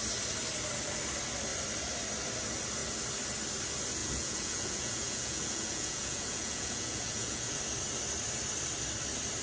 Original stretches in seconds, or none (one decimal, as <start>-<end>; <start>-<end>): 0.0-4.0; 7.6-9.4